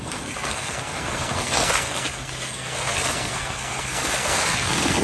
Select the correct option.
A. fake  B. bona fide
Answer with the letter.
A